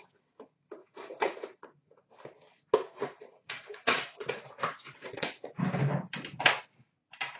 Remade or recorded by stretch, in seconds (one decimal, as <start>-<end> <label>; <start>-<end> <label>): 0.0-0.8 recorded; 0.8-2.0 remade; 2.0-3.0 recorded; 3.0-5.6 remade; 5.6-7.4 recorded